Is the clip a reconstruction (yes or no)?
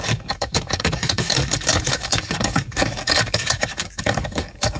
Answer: yes